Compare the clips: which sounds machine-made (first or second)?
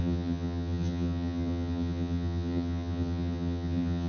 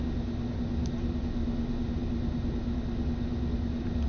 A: first